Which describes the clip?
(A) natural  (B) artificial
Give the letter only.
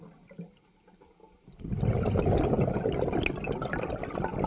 A